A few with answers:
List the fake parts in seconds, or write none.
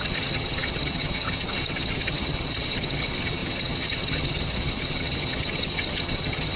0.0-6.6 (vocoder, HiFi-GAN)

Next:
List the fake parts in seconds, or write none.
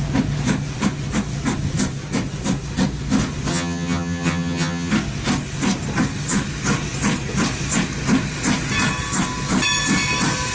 3.5-4.9 (vocoder, HiFi-GAN)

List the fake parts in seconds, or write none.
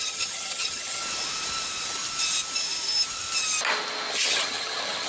0.0-1.0 (vocoder, HiFi-GAN); 4.1-5.1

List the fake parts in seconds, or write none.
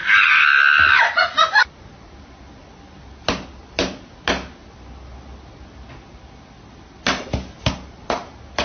none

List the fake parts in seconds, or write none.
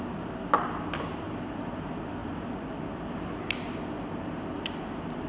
none